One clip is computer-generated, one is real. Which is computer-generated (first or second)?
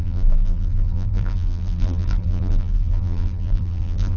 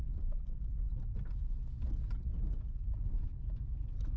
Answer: first